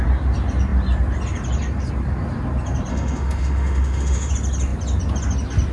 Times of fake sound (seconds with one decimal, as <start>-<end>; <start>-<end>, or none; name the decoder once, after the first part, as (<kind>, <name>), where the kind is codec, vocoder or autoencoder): 2.9-4.3 (autoencoder, DAC-VAE)